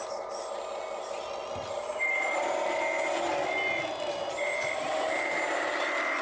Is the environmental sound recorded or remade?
recorded